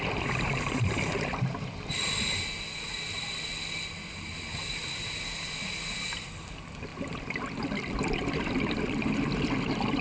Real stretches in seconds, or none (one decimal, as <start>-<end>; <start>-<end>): 0.0-10.0